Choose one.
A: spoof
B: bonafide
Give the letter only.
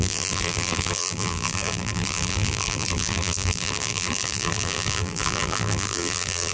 A